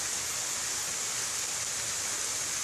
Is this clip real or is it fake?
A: real